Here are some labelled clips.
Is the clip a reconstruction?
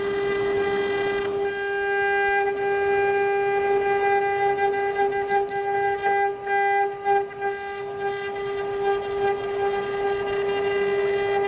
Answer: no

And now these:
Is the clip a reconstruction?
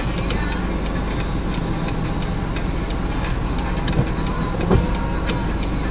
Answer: no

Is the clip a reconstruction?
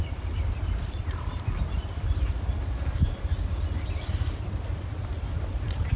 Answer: no